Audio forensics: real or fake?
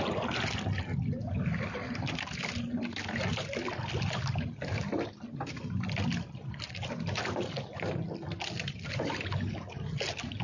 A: real